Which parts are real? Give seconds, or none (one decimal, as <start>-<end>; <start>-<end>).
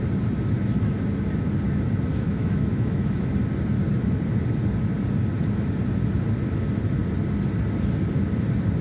0.0-2.1; 3.3-8.8